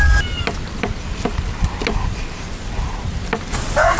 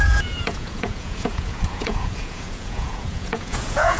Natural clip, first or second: first